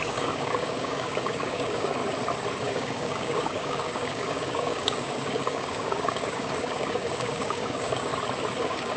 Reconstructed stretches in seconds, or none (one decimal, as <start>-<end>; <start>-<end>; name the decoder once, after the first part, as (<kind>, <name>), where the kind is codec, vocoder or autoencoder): 0.0-2.0 (codec, DAC); 2.6-8.1; 8.6-9.0